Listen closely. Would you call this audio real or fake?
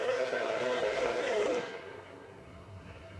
fake